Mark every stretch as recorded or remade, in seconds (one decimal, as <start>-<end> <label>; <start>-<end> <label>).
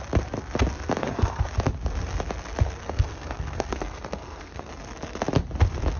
0.0-1.0 recorded; 1.0-1.5 remade; 1.5-2.8 recorded; 2.8-4.7 remade; 4.7-6.0 recorded